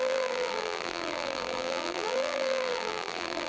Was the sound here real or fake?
fake